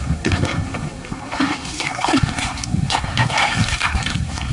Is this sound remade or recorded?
remade